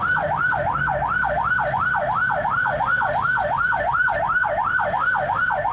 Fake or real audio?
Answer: real